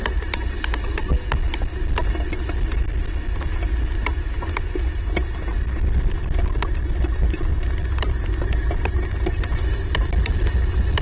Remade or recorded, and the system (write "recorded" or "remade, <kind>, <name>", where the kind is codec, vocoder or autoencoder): recorded